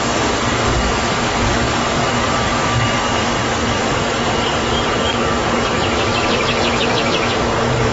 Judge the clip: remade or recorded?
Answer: remade